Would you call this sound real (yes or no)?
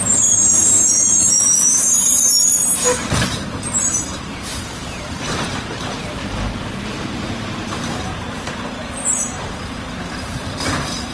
no